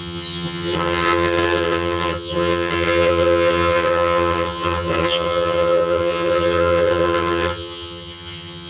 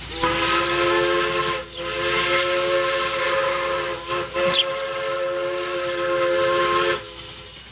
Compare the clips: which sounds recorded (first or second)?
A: second